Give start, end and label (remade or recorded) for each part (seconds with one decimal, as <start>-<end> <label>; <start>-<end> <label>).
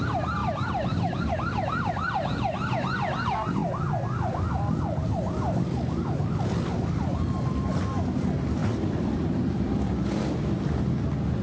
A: 0.0-3.6 recorded; 3.6-5.1 remade; 5.1-8.6 recorded; 8.6-10.8 remade; 10.8-11.4 recorded